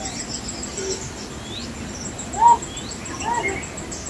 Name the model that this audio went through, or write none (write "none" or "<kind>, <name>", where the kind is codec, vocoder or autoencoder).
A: none